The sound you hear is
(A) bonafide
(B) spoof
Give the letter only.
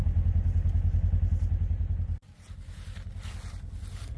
A